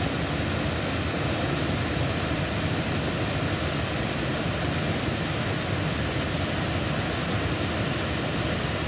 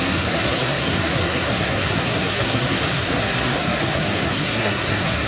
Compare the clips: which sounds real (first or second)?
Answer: first